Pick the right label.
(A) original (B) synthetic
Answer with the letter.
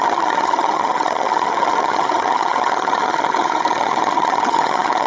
B